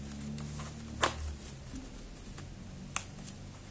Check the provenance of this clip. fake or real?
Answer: real